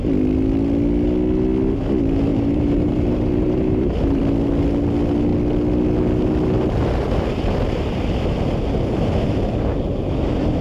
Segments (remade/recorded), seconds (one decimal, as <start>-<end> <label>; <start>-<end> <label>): 0.0-2.3 recorded; 2.3-4.2 remade; 4.2-10.6 recorded